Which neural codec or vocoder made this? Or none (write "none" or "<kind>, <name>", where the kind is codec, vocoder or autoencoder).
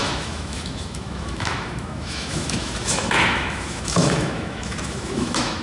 autoencoder, DAC-VAE